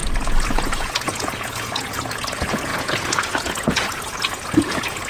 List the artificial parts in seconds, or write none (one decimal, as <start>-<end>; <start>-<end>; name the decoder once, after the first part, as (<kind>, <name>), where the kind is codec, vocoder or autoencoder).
0.0-5.1 (vocoder, Vocos)